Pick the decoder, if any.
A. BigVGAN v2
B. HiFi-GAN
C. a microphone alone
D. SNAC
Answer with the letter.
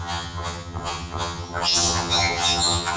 B